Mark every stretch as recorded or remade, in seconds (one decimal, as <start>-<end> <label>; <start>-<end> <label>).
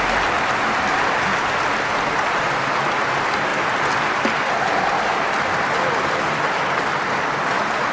0.0-7.9 recorded